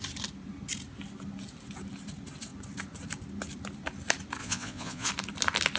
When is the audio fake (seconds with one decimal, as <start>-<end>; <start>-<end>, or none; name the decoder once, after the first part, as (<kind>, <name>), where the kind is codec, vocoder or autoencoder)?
4.4-5.1 (vocoder, Vocos)